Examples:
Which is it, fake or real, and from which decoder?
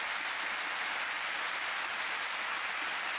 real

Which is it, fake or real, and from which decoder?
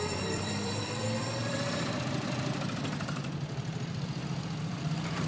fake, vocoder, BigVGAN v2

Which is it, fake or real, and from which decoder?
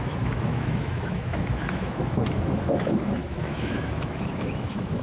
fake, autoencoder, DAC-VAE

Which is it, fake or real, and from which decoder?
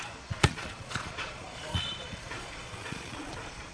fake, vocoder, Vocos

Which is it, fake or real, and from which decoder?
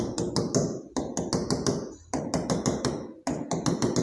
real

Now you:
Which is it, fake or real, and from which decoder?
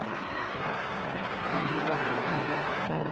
fake, codec, SNAC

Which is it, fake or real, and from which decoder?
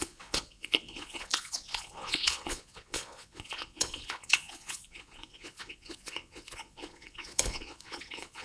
fake, vocoder, Vocos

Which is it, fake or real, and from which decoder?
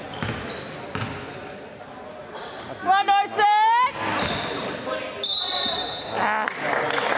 real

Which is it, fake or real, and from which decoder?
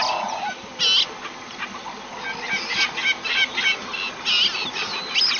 real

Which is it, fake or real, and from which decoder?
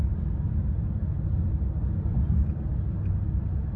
real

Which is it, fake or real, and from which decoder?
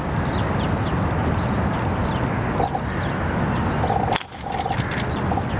real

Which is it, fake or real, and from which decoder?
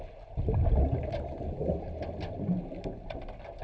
real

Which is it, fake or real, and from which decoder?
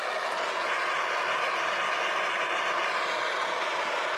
real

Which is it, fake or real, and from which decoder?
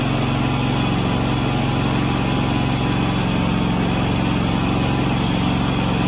real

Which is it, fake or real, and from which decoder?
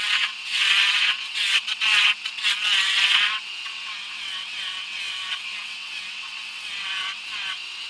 fake, vocoder, WaveNeXt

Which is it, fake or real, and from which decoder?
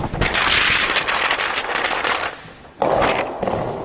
real